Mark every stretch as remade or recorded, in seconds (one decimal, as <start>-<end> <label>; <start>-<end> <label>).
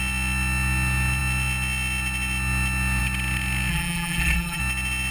0.0-3.7 recorded; 3.7-4.6 remade; 4.6-5.1 recorded